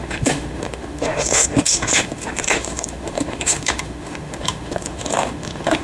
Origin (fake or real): fake